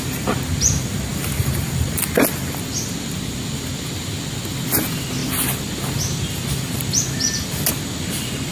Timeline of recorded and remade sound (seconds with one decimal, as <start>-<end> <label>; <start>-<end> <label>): 0.0-8.5 recorded